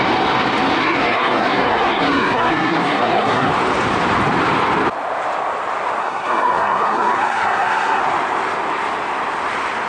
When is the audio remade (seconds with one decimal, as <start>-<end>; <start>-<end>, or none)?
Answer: 0.8-3.5; 6.0-8.0